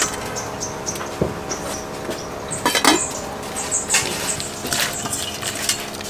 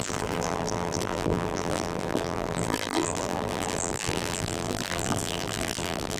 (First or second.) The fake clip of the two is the second